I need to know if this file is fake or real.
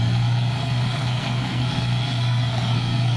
fake